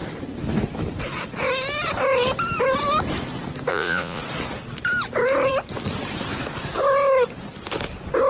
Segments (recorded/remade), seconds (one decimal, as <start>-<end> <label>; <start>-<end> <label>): 0.0-3.7 recorded; 3.7-4.2 remade; 4.2-8.3 recorded